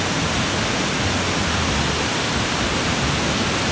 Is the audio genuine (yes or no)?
yes